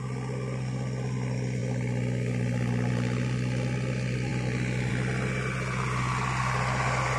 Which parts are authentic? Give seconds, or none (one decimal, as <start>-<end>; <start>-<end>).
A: 0.0-7.2